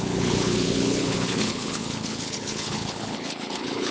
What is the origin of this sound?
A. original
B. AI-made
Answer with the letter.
B